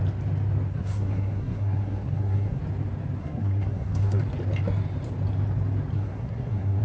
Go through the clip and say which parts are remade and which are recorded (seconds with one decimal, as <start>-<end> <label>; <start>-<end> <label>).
0.0-0.7 recorded; 0.7-2.6 remade; 2.6-3.2 recorded; 3.2-4.2 remade; 4.2-5.9 recorded; 5.9-6.8 remade